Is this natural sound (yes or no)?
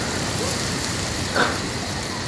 yes